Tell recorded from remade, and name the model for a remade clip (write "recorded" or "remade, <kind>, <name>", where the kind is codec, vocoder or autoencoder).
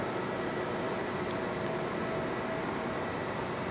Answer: recorded